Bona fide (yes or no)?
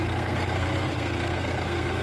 no